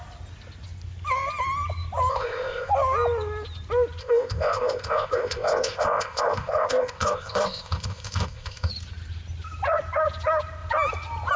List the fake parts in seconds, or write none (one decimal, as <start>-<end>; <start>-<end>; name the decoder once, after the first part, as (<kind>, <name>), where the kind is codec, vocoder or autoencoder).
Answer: 2.1-2.7 (codec, ZipCodec); 4.0-8.7